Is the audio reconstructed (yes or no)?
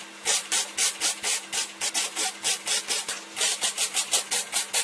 no